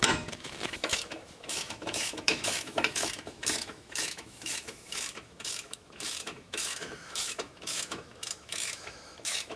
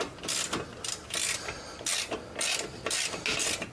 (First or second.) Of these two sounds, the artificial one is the first